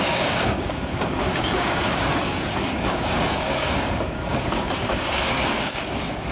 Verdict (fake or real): fake